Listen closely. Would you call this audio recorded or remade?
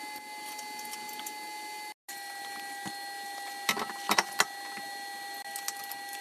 recorded